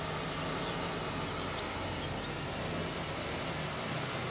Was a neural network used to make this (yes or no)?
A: no